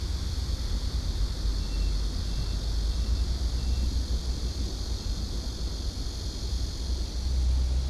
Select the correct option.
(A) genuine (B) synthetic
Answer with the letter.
A